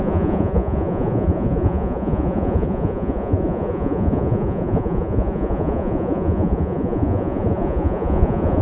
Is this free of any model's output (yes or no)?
no